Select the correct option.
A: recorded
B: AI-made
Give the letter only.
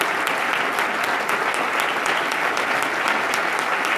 A